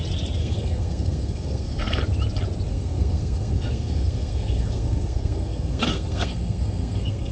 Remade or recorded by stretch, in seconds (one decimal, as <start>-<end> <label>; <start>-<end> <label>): 0.0-0.4 recorded; 0.4-2.0 remade; 2.0-2.7 recorded; 2.7-7.3 remade